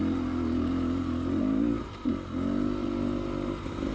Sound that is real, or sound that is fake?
real